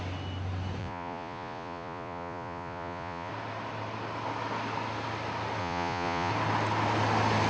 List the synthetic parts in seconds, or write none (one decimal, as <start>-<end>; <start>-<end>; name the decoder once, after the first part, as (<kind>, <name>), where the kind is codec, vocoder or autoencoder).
0.8-3.3 (vocoder, Vocos); 5.6-6.3